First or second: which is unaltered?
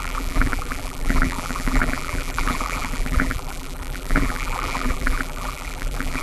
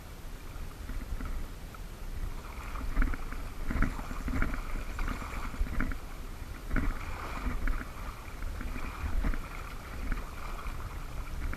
second